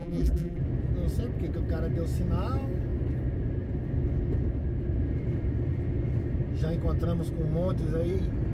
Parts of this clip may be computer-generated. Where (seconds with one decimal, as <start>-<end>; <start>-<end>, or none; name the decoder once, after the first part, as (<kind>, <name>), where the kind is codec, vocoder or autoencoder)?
0.0-0.6 (vocoder, BigVGAN v2)